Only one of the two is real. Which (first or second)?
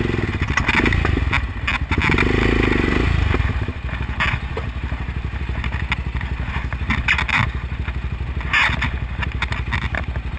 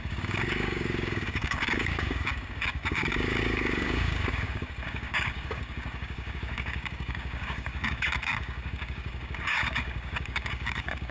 first